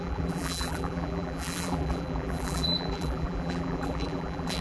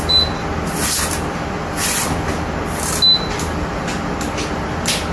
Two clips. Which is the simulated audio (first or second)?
first